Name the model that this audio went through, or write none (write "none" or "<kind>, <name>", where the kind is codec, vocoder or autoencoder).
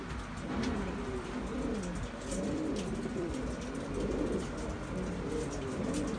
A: none